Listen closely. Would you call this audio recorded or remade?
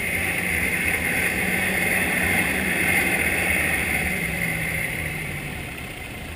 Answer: remade